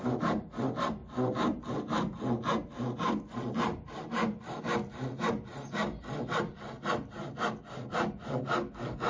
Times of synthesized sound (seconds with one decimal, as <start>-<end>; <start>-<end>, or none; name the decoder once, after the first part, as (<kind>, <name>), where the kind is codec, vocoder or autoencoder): none

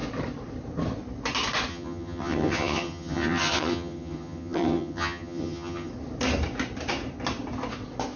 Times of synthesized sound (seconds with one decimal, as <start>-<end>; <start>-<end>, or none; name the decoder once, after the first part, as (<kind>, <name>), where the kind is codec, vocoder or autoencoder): 1.7-5.9 (vocoder, HiFi-GAN)

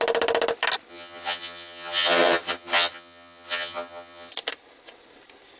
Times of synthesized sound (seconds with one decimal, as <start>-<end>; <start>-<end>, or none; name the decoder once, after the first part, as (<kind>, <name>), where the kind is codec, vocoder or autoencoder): 0.9-4.3 (vocoder, HiFi-GAN)

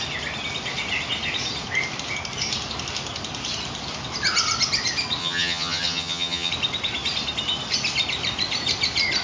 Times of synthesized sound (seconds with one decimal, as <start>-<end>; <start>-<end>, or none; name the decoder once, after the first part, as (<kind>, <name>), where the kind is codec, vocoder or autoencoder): 5.2-6.5 (vocoder, HiFi-GAN)

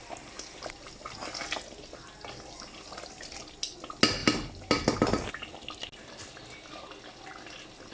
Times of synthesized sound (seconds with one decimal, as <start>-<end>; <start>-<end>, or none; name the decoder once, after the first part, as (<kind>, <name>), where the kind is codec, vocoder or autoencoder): none